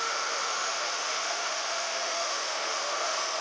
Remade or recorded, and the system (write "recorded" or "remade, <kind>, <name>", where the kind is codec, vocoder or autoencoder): remade, autoencoder, DAC-VAE